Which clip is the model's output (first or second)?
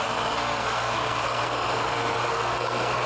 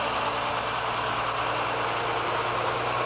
first